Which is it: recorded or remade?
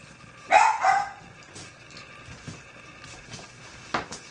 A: recorded